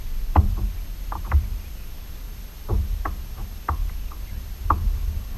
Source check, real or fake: real